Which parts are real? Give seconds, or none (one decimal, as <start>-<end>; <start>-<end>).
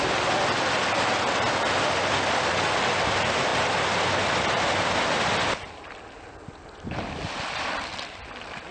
0.0-8.7